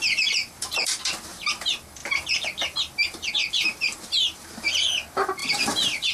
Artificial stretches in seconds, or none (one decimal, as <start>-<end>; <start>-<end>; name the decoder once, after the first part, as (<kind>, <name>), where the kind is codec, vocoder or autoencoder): 0.0-6.1 (vocoder, BigVGAN v2)